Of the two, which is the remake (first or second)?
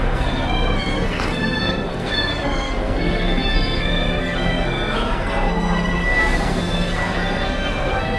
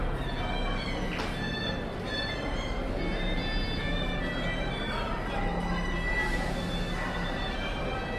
first